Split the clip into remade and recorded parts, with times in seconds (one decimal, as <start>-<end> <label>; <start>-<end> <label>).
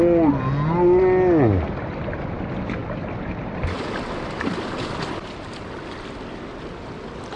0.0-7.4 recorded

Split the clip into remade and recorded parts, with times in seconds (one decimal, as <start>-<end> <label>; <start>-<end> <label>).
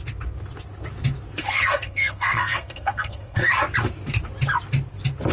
0.0-1.4 recorded; 1.4-3.6 remade; 3.6-5.3 recorded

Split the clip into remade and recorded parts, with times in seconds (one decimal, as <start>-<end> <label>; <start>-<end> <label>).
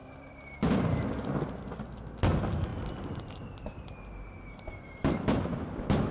0.0-0.8 remade; 0.8-2.7 recorded; 2.7-5.0 remade; 5.0-6.1 recorded